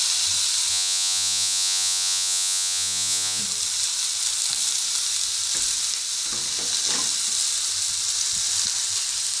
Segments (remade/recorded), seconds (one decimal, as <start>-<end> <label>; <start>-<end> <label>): 0.0-0.7 recorded; 0.7-3.4 remade; 3.4-9.4 recorded